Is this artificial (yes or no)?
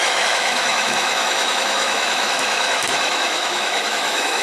yes